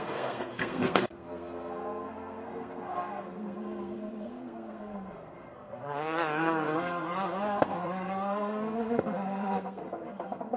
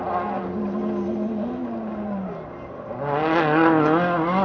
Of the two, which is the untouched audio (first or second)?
second